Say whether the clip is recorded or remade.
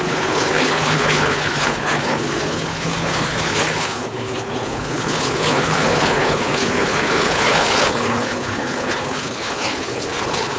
remade